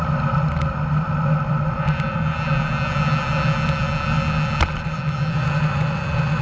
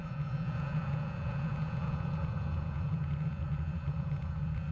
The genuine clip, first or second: first